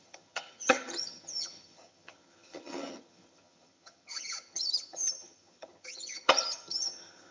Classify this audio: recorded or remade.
remade